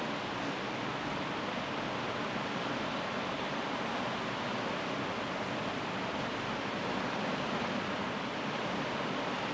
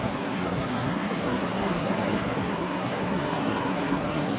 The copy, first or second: second